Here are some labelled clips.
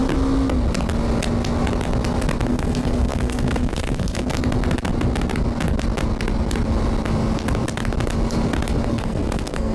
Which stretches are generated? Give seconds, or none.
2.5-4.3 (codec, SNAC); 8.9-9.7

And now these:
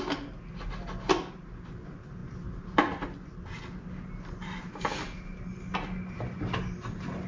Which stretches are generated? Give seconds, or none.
none

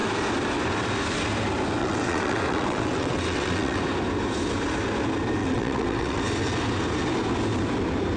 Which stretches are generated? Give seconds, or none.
1.8-3.8 (vocoder, WaveNeXt); 5.4-6.2

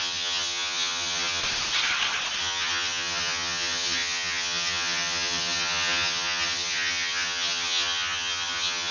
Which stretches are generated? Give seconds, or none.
0.0-1.4 (vocoder, HiFi-GAN); 2.4-8.9

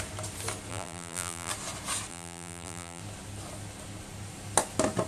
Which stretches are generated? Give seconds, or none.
0.7-1.5 (vocoder, BigVGAN v2); 2.1-3.0

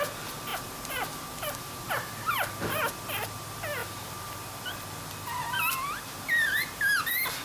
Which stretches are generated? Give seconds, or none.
0.5-2.9 (vocoder, BigVGAN v2); 3.8-4.6; 5.4-7.0

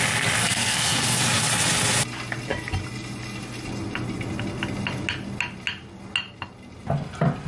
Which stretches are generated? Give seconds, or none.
0.4-1.2 (codec, SNAC)